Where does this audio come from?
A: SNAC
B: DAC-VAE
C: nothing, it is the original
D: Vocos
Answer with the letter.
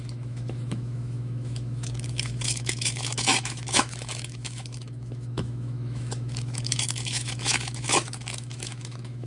B